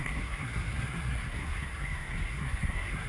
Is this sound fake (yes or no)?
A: yes